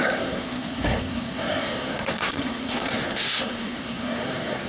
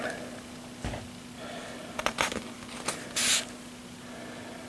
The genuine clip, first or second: second